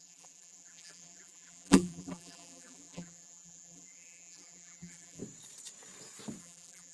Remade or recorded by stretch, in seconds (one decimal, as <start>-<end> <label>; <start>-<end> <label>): 0.0-5.2 remade; 5.2-6.4 recorded; 6.4-6.9 remade